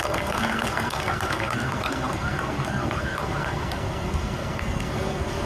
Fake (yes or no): yes